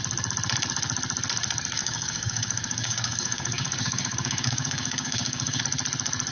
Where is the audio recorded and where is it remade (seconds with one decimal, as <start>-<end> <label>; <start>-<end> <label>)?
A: 0.0-1.8 recorded; 1.8-5.6 remade; 5.6-6.3 recorded